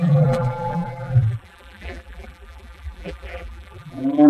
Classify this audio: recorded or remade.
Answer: remade